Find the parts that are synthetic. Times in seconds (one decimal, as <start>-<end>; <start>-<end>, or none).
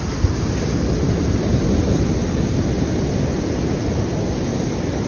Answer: none